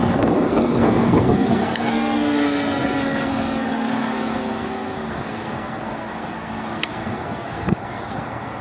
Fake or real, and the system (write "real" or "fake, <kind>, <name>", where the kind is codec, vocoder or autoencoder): fake, codec, SNAC